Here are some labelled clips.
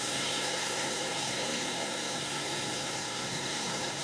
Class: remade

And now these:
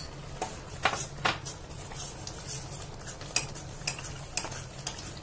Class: recorded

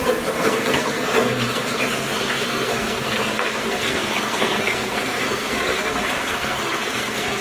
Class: remade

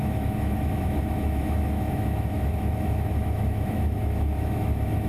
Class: remade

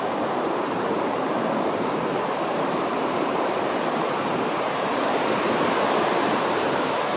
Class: remade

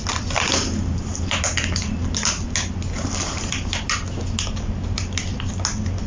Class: recorded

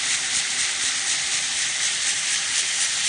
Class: remade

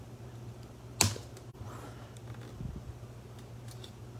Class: recorded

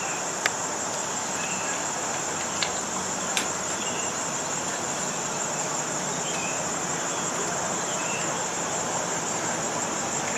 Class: recorded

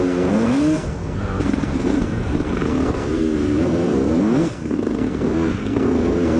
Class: remade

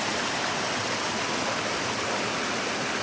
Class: recorded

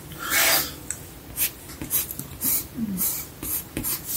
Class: recorded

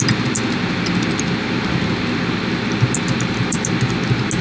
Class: recorded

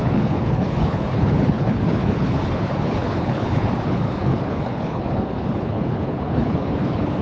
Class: remade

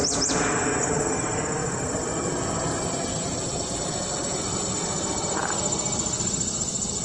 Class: recorded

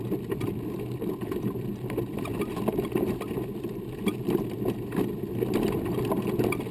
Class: recorded